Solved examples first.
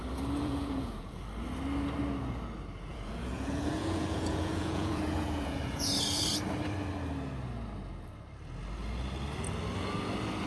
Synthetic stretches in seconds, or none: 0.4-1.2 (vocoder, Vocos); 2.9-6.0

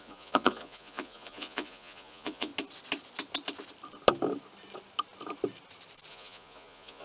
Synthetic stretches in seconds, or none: 0.0-2.5 (vocoder, Vocos); 6.1-7.0

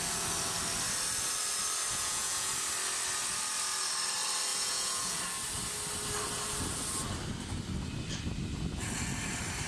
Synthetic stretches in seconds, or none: 1.9-2.5 (vocoder, Vocos); 4.5-5.2